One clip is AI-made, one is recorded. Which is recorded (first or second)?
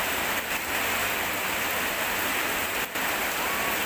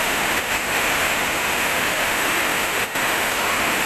first